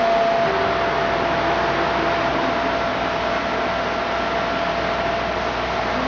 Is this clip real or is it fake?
real